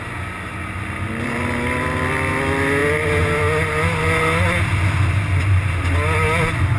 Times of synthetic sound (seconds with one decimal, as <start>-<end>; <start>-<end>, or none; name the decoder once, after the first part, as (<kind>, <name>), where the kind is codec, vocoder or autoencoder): none